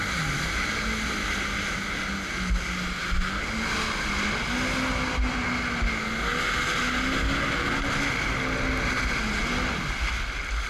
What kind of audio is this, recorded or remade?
recorded